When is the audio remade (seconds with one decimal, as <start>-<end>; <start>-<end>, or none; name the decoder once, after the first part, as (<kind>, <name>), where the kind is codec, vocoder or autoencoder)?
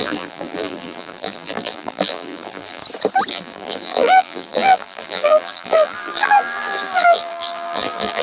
0.0-2.8 (vocoder, BigVGAN v2); 3.3-8.2